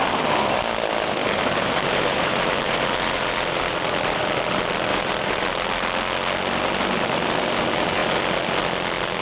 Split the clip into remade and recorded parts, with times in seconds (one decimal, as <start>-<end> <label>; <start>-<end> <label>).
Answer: 0.0-1.2 recorded; 1.2-4.2 remade; 4.2-4.9 recorded; 4.9-5.5 remade; 5.5-9.2 recorded